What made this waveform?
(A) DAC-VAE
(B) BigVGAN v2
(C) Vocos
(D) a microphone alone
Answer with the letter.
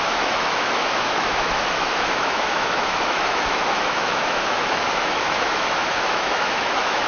A